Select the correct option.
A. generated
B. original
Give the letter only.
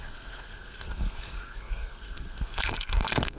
A